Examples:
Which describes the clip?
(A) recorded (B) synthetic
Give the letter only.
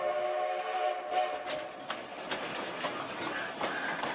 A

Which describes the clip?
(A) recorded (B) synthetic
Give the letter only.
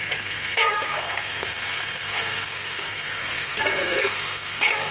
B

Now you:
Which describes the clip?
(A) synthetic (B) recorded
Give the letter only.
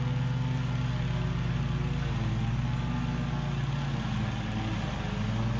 B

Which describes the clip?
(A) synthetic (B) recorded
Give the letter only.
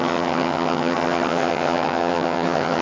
A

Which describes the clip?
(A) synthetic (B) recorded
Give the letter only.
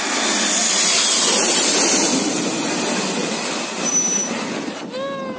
B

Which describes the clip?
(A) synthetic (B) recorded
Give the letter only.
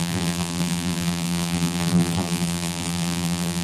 A